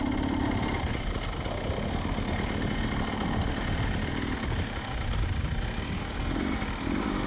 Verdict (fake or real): real